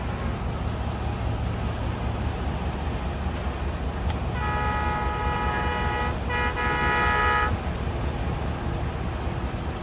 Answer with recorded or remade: recorded